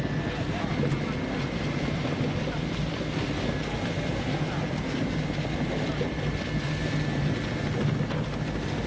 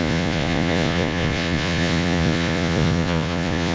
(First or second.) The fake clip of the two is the second